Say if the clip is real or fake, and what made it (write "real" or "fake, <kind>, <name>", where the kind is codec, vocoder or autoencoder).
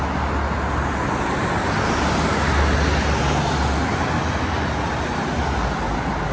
real